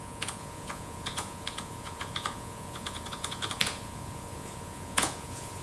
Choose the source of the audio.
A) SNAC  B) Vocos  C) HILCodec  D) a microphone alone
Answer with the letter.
B